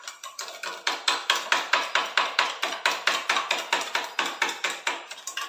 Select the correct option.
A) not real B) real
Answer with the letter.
B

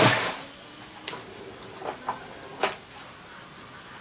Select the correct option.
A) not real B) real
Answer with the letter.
B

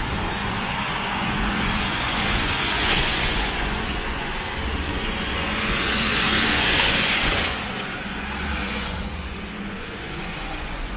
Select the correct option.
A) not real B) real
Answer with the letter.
A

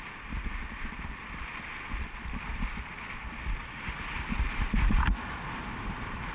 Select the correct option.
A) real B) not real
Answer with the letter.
B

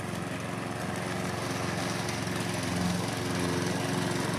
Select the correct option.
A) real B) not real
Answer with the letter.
A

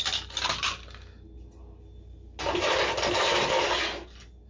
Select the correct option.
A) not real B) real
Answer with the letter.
B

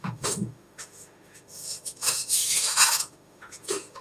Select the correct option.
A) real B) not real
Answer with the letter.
B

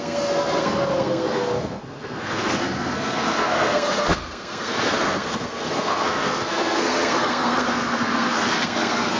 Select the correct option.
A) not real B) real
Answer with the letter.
A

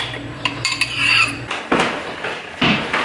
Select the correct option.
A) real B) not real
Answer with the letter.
B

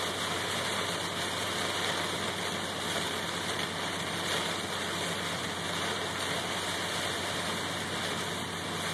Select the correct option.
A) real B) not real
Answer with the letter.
A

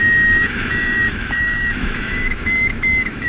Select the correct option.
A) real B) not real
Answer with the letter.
B